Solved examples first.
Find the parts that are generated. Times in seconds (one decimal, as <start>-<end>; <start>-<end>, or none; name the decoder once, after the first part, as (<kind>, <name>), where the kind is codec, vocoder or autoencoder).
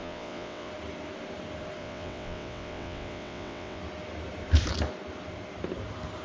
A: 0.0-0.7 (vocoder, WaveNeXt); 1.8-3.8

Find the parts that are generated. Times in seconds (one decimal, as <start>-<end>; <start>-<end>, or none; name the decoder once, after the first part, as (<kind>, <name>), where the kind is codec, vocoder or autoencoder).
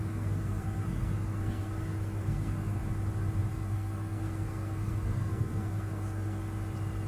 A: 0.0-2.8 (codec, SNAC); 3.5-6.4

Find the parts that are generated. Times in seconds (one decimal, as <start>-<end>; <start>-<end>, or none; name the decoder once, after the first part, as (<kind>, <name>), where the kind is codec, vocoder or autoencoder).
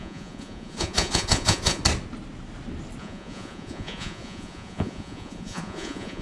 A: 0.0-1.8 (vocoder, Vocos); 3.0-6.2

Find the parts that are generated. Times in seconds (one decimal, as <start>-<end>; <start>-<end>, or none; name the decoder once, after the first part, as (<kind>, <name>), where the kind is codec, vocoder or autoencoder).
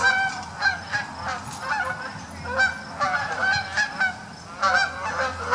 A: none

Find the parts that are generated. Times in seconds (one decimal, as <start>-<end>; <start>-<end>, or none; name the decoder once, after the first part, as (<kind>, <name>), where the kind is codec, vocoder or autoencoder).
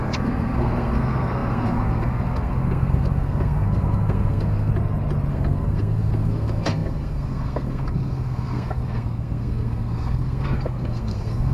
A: 0.0-4.7 (codec, SNAC); 5.3-11.5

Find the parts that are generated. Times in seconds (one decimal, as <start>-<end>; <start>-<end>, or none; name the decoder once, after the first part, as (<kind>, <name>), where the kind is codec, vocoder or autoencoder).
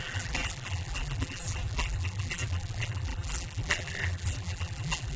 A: 0.0-5.2 (vocoder, BigVGAN v2)